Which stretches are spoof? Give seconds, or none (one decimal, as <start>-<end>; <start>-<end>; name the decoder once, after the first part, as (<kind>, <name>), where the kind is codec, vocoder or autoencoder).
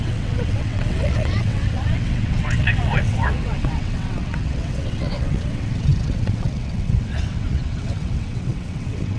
0.0-9.2 (vocoder, WaveNeXt)